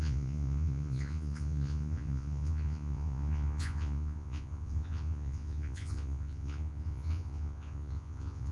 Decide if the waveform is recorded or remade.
remade